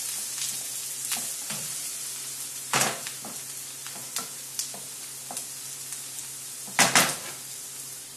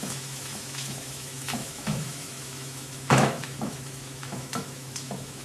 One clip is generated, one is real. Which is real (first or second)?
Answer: first